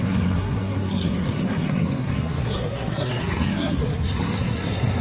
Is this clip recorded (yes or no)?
no